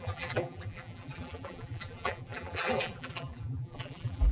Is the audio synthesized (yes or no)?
yes